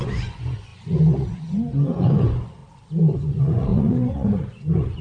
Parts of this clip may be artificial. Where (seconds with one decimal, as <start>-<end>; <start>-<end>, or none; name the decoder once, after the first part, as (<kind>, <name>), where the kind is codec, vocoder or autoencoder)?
0.0-2.6 (vocoder, Vocos); 3.2-5.0